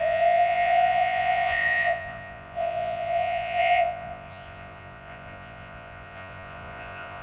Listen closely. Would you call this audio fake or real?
fake